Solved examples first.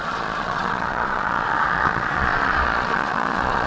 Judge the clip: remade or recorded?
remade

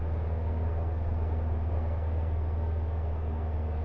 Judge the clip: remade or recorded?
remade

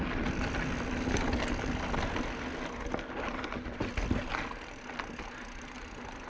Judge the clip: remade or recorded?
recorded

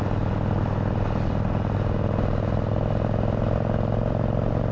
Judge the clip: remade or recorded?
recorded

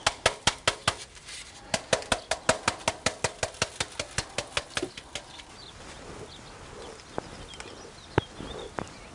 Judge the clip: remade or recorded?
recorded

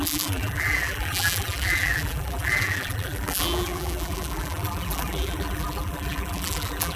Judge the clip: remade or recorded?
remade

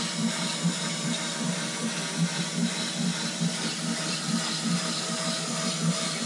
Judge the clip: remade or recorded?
recorded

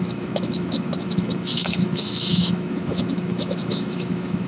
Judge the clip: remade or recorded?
remade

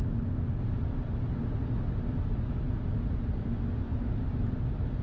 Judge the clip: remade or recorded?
recorded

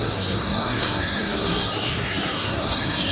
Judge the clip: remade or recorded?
remade